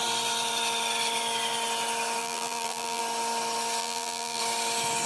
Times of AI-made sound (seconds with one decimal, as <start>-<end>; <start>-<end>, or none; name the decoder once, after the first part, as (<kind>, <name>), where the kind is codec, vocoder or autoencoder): 2.2-3.0 (vocoder, BigVGAN v2); 3.8-4.4